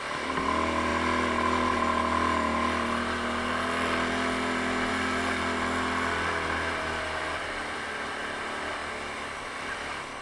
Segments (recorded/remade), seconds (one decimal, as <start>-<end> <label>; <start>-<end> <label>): 0.0-10.2 recorded